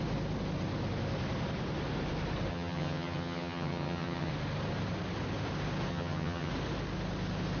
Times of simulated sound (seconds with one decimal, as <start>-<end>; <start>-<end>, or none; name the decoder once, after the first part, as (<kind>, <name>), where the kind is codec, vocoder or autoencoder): 2.5-4.3 (vocoder, HiFi-GAN); 5.9-6.5